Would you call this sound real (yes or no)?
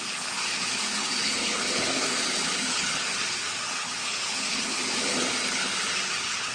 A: no